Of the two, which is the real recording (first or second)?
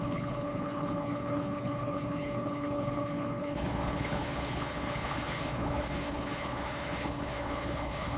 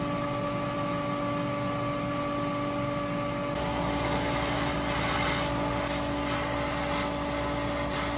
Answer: second